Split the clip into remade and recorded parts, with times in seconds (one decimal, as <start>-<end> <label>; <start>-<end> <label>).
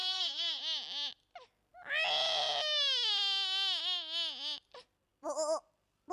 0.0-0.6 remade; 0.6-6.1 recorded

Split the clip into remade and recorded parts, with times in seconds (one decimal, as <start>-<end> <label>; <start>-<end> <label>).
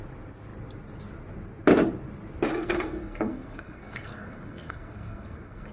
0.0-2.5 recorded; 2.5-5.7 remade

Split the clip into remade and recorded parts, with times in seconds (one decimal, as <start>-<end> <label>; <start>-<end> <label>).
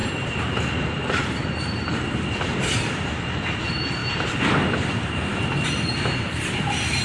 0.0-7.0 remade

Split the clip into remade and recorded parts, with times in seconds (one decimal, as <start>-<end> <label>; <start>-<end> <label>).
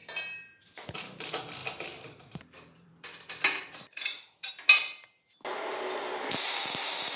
0.0-1.6 recorded; 1.6-4.5 remade; 4.5-7.2 recorded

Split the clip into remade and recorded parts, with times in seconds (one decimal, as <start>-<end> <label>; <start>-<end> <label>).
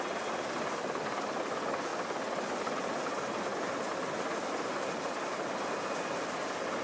0.0-1.9 recorded; 1.9-6.0 remade; 6.0-6.8 recorded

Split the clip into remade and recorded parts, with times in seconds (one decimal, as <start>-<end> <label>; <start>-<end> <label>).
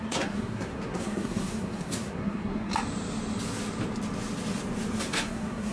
0.0-2.7 remade; 2.7-5.0 recorded; 5.0-5.7 remade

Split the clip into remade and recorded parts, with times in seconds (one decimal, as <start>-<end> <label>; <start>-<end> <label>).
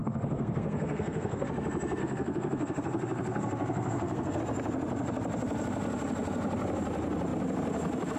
0.0-1.5 remade; 1.5-2.0 recorded; 2.0-4.4 remade; 4.4-8.2 recorded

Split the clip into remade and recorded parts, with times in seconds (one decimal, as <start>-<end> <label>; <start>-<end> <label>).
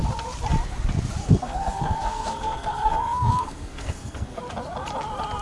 0.0-1.2 recorded; 1.2-4.4 remade; 4.4-5.4 recorded